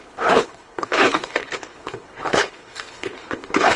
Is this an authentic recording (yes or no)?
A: no